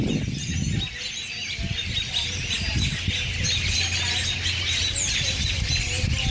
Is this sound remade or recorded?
recorded